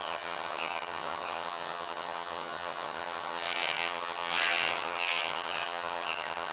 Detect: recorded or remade remade